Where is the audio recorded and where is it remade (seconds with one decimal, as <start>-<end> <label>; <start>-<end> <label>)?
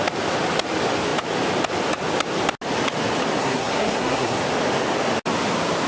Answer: 0.0-3.4 recorded; 3.4-4.4 remade; 4.4-5.9 recorded